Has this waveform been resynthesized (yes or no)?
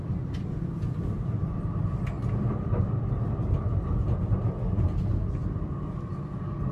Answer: no